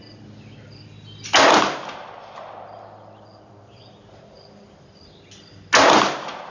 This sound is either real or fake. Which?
real